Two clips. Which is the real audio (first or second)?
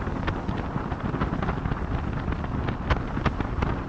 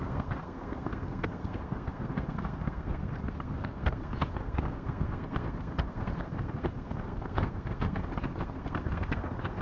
first